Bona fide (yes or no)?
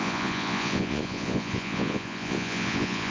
no